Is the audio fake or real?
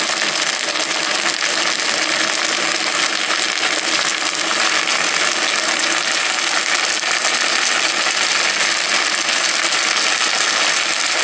real